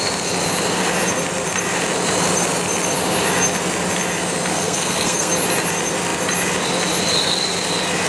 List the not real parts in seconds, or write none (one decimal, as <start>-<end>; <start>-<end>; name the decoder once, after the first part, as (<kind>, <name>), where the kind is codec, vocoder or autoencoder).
4.5-5.3 (codec, SNAC)